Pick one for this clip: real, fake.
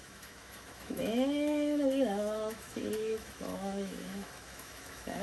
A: fake